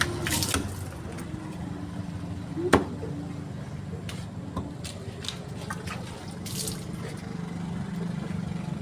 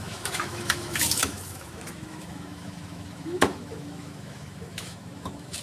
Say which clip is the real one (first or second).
first